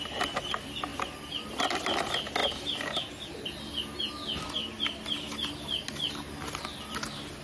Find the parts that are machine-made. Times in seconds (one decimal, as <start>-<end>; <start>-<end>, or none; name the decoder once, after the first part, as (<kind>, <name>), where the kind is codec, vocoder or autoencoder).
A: none